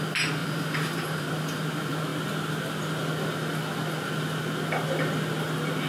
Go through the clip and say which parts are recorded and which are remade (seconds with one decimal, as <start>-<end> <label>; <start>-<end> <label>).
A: 0.0-0.4 recorded; 0.4-1.3 remade; 1.3-5.9 recorded